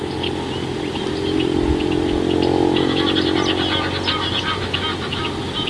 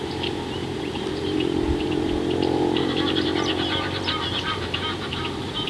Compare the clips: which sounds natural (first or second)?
first